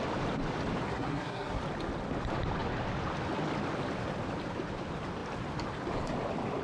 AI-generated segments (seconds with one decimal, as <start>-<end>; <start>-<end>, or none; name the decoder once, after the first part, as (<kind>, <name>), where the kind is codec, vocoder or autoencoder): 0.9-1.6 (codec, SNAC)